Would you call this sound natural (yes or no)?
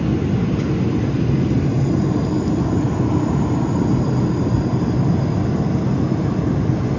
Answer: yes